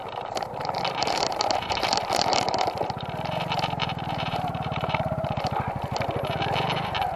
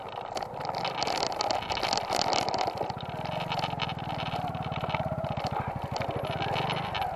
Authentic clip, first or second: second